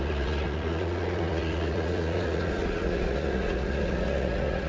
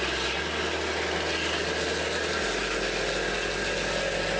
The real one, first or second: second